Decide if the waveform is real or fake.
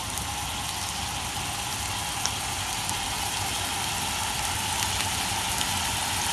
real